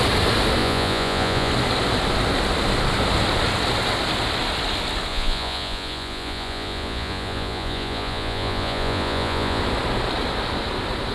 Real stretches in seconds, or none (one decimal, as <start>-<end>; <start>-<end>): 0.0-0.6; 1.5-5.1; 9.6-11.1